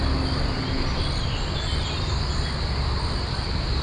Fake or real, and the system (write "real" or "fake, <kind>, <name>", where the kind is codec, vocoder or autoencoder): real